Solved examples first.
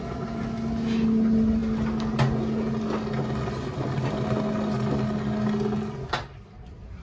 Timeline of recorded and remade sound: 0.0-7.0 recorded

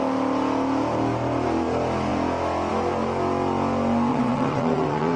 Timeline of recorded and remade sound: 0.0-4.1 recorded; 4.1-5.2 remade

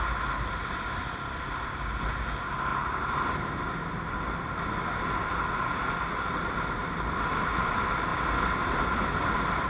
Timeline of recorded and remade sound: 0.0-9.7 recorded

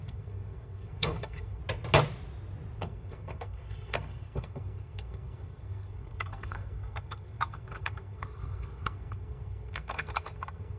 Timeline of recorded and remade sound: 0.0-1.6 remade; 1.6-2.8 recorded; 2.8-10.8 remade